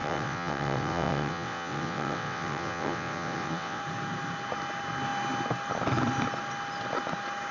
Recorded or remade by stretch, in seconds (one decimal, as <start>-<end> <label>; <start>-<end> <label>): 0.0-3.8 remade; 3.8-7.5 recorded